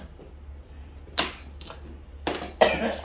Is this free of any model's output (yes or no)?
yes